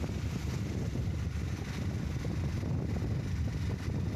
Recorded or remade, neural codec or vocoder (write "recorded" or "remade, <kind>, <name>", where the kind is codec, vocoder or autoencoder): recorded